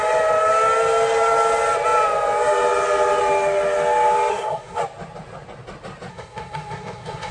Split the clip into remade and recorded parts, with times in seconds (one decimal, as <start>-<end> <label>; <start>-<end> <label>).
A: 0.0-4.3 recorded; 4.3-4.8 remade; 4.8-6.1 recorded; 6.1-7.3 remade